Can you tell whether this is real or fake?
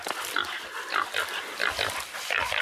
real